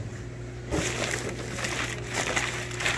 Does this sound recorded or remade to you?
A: recorded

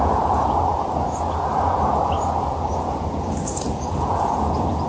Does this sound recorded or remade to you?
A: remade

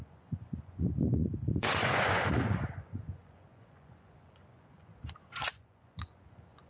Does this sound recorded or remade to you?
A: remade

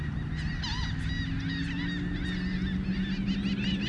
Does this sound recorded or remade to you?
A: recorded